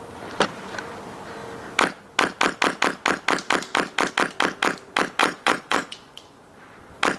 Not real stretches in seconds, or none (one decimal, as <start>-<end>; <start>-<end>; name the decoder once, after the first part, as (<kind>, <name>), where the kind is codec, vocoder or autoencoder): 5.2-6.4 (vocoder, Vocos)